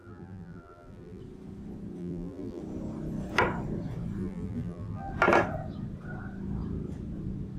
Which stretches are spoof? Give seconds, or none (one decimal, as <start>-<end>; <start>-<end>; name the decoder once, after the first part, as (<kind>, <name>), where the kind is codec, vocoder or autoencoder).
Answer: 0.0-1.2 (vocoder, BigVGAN v2); 2.0-2.6; 4.2-5.1